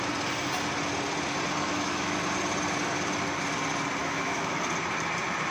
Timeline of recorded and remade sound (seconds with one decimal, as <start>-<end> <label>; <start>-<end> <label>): 0.0-1.7 recorded; 1.7-2.2 remade; 2.2-4.0 recorded; 4.0-4.6 remade; 4.6-5.5 recorded